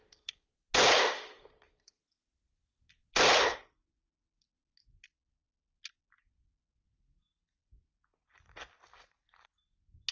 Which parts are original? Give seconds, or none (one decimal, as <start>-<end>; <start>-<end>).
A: 0.0-10.1